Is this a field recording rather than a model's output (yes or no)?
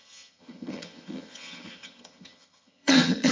no